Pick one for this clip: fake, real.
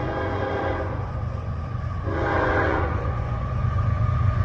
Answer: fake